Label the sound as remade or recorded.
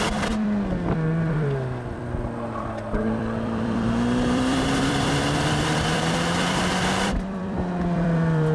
remade